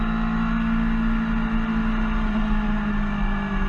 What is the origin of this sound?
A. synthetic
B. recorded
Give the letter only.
B